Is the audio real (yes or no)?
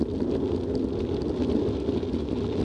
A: yes